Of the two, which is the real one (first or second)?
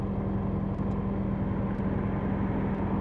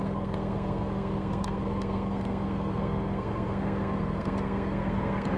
first